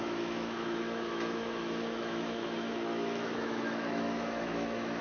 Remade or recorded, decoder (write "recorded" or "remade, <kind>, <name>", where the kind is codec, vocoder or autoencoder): remade, autoencoder, DAC-VAE